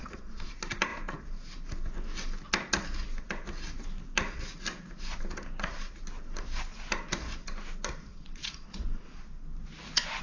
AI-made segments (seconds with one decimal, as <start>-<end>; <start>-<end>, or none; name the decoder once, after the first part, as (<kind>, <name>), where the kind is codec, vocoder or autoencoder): 0.0-0.5 (vocoder, Vocos); 8.1-9.2